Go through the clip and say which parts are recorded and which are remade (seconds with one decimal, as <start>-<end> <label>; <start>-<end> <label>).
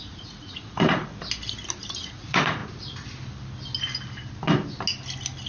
0.0-1.1 remade; 1.1-2.0 recorded; 2.0-2.6 remade; 2.6-5.5 recorded